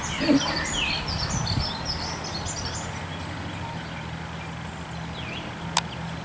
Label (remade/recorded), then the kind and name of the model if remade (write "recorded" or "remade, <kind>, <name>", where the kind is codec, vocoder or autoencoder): recorded